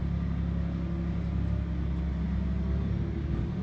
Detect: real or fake real